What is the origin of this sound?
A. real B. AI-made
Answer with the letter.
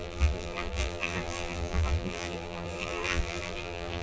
B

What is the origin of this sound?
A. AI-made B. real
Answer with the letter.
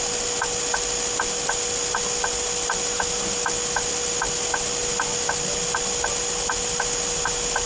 B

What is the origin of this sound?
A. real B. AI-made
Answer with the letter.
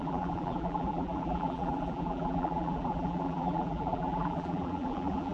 B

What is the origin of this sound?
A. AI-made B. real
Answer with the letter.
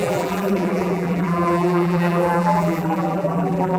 A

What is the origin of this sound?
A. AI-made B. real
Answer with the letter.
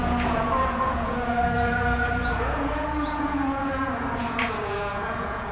A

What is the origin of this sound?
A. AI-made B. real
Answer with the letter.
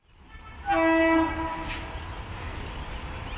B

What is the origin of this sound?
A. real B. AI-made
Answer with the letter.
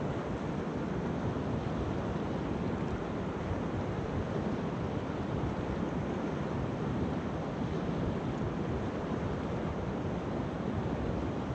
A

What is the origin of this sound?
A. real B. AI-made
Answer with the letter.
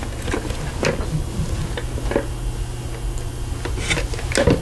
A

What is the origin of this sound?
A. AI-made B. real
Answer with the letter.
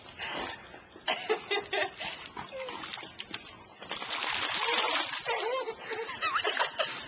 B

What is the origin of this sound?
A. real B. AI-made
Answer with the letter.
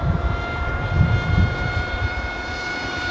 B